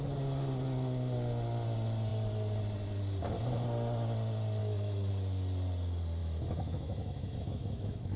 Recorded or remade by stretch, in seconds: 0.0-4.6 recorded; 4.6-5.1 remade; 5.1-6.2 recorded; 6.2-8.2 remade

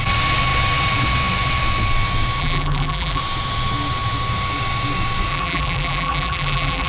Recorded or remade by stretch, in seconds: 0.0-2.4 recorded; 2.4-3.2 remade; 3.2-5.3 recorded; 5.3-6.9 remade

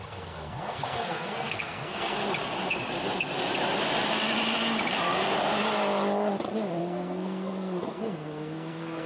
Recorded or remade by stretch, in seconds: 0.0-2.2 remade; 2.2-6.8 recorded; 6.8-9.1 remade

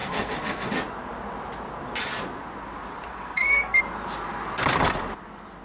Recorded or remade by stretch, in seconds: 0.0-0.7 remade; 0.7-3.1 recorded; 3.1-3.8 remade; 3.8-5.6 recorded